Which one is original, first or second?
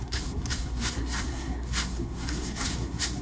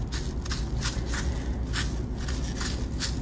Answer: second